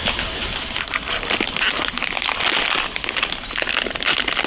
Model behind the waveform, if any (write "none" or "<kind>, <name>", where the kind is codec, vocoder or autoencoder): none